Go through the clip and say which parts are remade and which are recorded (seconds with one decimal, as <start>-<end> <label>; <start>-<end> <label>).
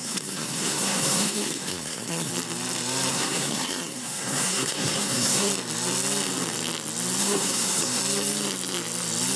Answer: 0.0-2.3 remade; 2.3-3.1 recorded; 3.1-5.5 remade; 5.5-7.2 recorded; 7.2-8.0 remade; 8.0-9.4 recorded